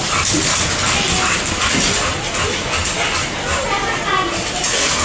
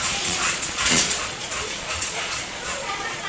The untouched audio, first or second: first